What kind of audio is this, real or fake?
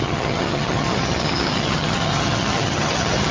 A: fake